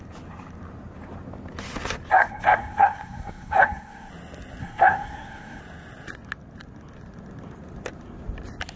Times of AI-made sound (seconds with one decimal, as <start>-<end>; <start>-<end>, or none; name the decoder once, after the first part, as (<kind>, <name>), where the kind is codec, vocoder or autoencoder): 2.1-4.1 (codec, SNAC); 4.6-5.6